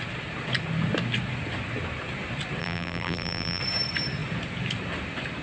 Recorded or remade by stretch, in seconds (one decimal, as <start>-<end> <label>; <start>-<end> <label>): 0.0-2.6 recorded; 2.6-3.6 remade; 3.6-5.4 recorded